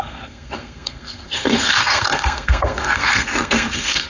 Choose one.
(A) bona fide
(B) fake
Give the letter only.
B